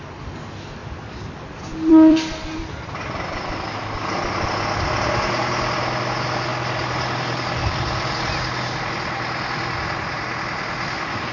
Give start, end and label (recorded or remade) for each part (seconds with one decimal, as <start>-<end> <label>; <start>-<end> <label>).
0.0-0.8 recorded; 0.8-4.5 remade; 4.5-6.5 recorded; 6.5-8.2 remade; 8.2-11.3 recorded